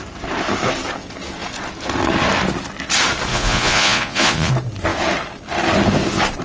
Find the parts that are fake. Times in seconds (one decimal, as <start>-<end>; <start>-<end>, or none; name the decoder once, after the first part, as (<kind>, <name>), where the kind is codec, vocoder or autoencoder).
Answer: 3.3-4.5 (vocoder, Vocos)